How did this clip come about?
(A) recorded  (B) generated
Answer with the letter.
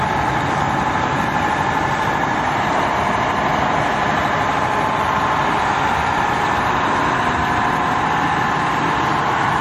A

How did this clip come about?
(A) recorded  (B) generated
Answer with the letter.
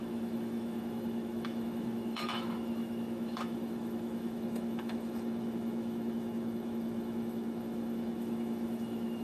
B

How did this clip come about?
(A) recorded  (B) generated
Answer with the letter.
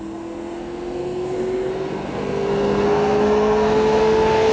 B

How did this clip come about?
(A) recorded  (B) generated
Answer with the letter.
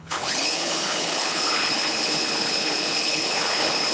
B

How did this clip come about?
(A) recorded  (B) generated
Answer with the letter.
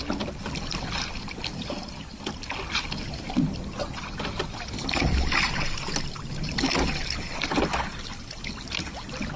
A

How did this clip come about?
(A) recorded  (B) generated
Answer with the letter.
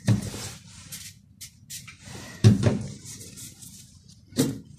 B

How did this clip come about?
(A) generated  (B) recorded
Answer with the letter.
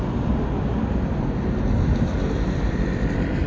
B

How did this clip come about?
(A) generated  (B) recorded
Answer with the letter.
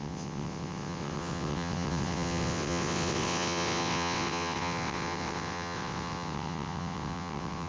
A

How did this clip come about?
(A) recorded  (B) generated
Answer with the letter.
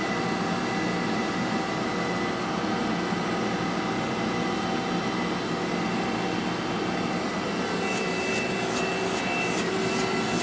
A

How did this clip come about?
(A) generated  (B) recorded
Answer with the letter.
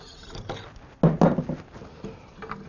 B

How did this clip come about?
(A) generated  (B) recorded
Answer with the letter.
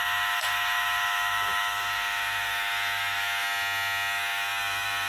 A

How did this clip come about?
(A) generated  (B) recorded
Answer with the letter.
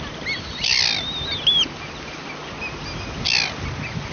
B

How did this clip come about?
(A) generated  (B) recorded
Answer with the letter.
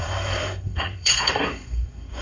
A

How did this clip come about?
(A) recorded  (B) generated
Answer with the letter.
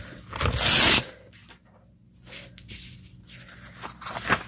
A